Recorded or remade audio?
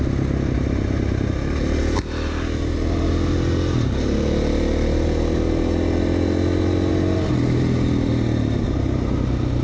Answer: recorded